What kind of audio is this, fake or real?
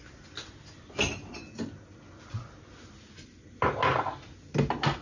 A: real